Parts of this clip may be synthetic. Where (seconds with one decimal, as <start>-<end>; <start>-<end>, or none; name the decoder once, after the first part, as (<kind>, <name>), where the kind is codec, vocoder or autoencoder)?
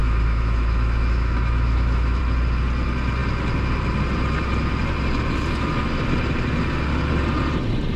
0.0-2.2 (autoencoder, DAC-VAE)